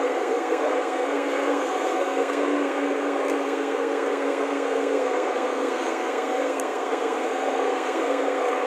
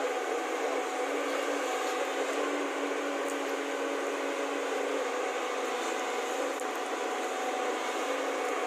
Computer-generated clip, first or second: first